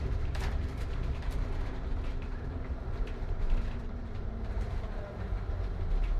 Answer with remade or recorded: remade